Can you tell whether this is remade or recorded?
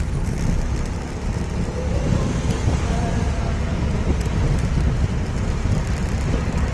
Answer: recorded